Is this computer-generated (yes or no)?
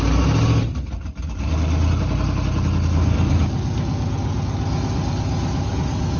no